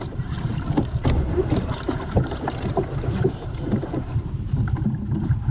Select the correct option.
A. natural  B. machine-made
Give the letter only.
B